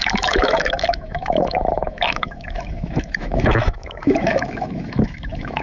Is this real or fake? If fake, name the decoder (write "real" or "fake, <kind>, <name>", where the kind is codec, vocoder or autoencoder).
fake, autoencoder, DAC-VAE